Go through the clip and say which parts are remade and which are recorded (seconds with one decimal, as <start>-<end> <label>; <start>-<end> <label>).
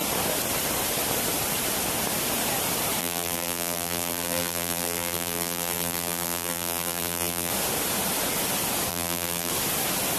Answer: 0.0-3.0 recorded; 3.0-7.5 remade; 7.5-8.9 recorded; 8.9-9.5 remade; 9.5-10.2 recorded